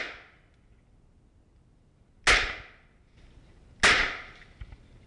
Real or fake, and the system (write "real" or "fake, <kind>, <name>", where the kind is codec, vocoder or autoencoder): real